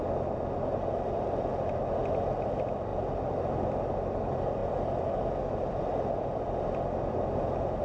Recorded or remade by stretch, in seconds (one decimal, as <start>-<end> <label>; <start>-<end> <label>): 0.0-7.8 recorded